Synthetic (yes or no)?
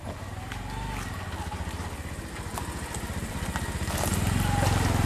no